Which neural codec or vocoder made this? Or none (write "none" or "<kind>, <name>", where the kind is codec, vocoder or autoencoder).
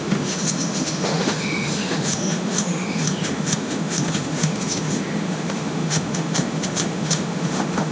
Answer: autoencoder, DAC-VAE